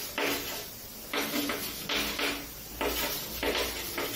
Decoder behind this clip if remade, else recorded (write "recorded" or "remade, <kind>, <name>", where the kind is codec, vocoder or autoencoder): recorded